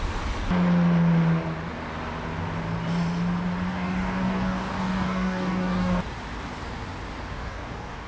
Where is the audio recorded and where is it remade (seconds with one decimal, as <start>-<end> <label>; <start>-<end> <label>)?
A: 0.0-3.7 recorded; 3.7-6.0 remade; 6.0-7.3 recorded; 7.3-8.1 remade